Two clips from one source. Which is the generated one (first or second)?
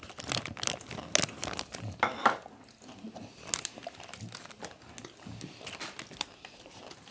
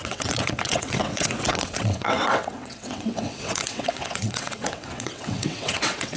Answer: second